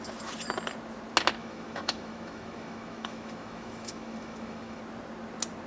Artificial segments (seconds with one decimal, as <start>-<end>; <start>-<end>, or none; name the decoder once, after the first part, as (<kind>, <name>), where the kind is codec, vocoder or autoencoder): 1.4-4.8 (autoencoder, DAC-VAE)